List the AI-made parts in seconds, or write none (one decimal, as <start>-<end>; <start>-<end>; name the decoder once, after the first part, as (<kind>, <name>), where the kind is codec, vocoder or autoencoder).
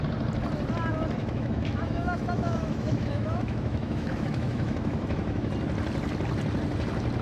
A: 1.2-5.5 (autoencoder, DAC-VAE)